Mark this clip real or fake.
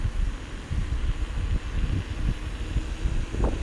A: real